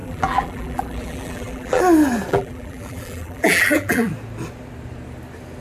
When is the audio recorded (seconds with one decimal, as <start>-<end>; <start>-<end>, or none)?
1.8-2.3; 4.1-5.6